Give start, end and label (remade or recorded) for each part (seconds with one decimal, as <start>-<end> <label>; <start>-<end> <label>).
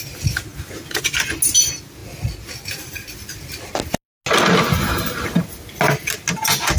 0.0-6.8 recorded